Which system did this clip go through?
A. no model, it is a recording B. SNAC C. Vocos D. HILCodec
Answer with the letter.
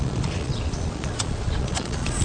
C